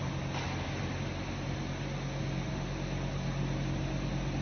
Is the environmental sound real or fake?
real